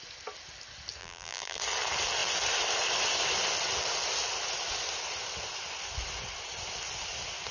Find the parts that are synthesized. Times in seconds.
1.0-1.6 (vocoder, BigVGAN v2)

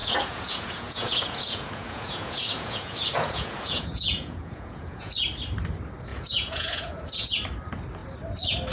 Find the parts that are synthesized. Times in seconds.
0.0-5.1 (vocoder, Vocos); 6.1-7.3

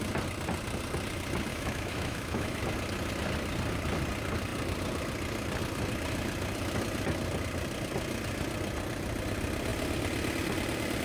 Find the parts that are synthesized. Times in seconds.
1.5-2.6 (autoencoder, DAC-VAE)

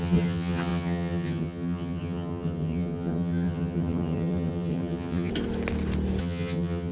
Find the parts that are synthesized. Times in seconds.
0.0-5.3 (vocoder, HiFi-GAN); 6.2-6.9

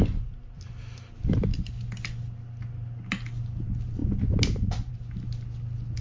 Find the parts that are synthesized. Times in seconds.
none

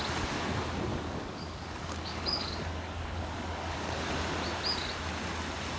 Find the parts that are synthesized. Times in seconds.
0.9-4.1 (codec, DAC)